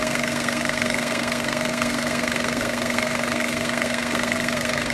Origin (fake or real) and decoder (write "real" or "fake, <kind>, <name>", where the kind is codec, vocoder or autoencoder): fake, codec, SNAC